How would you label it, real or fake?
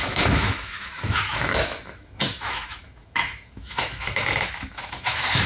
fake